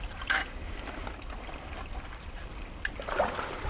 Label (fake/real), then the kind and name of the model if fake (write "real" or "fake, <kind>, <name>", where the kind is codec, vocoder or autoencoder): fake, vocoder, BigVGAN v2